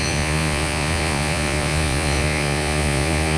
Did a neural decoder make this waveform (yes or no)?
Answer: yes